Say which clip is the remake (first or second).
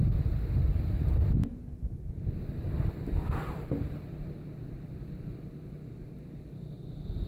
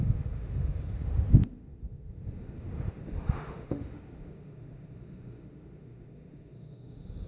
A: second